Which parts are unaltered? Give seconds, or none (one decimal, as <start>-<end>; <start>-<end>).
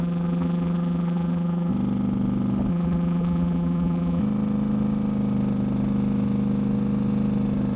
1.7-2.7; 4.2-7.8